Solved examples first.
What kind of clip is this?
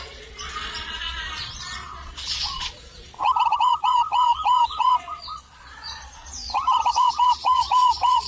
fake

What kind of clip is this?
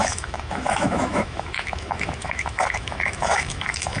fake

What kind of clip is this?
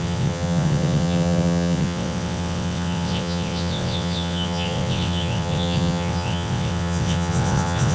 fake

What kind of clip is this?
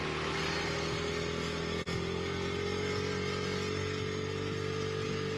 real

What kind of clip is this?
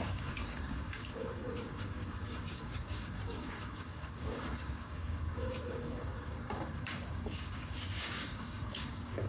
fake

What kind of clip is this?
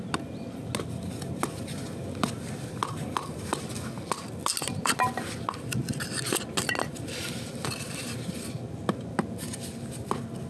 real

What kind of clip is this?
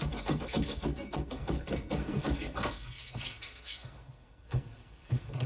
fake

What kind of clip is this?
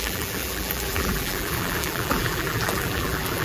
fake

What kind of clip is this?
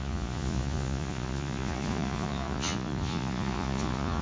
fake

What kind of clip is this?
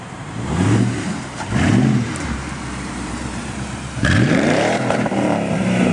fake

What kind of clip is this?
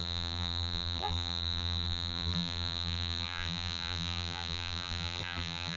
fake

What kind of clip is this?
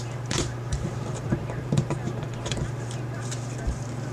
fake